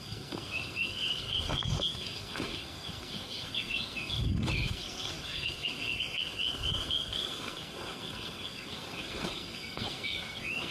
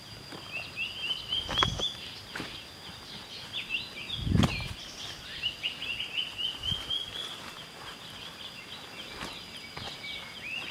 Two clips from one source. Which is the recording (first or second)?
second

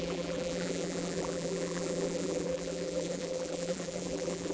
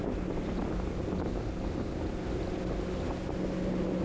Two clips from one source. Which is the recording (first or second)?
second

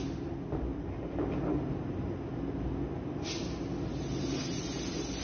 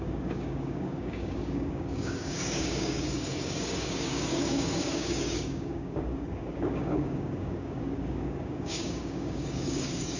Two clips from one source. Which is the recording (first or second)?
first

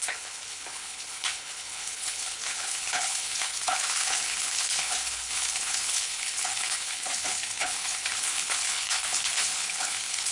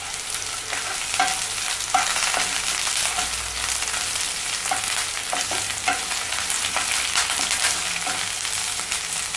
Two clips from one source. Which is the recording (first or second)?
second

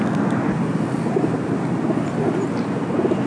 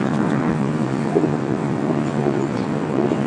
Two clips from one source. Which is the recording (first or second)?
first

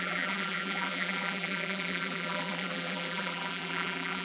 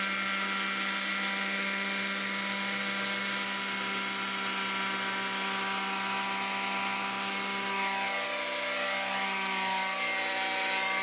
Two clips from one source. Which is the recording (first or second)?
second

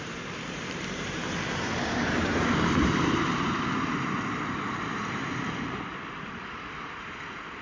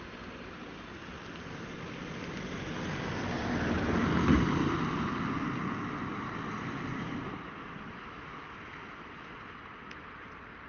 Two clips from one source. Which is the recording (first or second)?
second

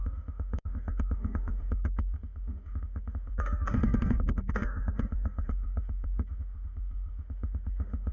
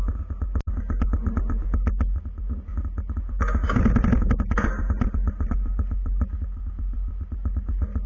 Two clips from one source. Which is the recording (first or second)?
second